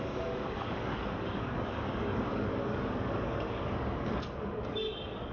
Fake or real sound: fake